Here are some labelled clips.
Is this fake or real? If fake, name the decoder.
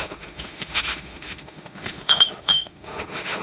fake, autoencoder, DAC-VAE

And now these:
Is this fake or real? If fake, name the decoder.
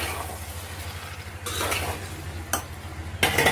real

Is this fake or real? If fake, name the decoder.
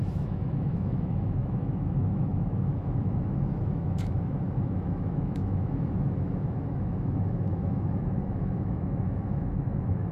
fake, autoencoder, DAC-VAE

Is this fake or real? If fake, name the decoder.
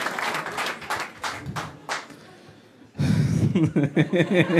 real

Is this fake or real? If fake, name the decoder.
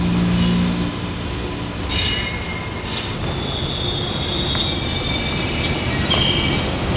real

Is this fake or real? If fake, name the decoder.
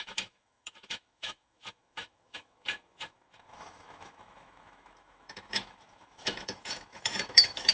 fake, autoencoder, DAC-VAE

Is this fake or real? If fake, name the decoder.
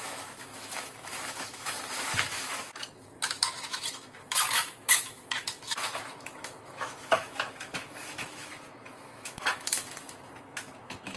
fake, autoencoder, DAC-VAE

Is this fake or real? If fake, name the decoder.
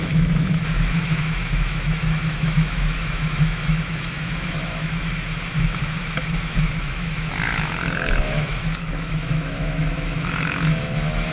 fake, autoencoder, DAC-VAE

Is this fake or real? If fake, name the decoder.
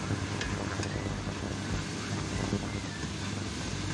real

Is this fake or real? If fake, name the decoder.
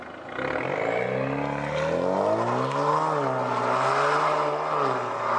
real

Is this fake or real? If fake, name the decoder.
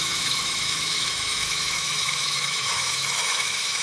fake, autoencoder, DAC-VAE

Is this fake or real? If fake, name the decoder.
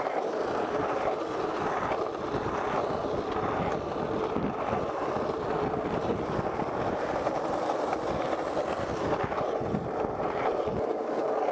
real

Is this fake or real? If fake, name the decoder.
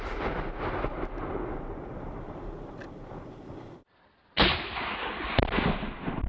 real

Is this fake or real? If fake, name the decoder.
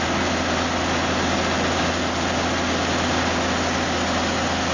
real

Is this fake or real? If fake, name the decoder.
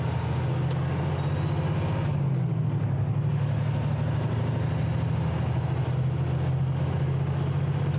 real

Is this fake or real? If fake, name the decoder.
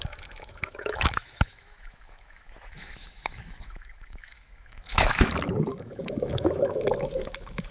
fake, autoencoder, DAC-VAE